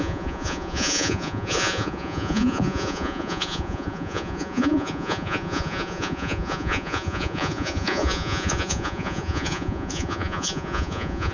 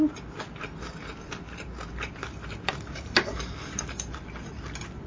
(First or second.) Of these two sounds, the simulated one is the first